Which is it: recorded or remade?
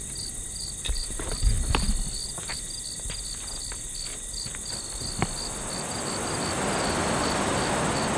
recorded